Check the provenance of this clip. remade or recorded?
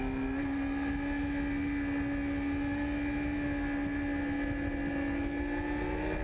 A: recorded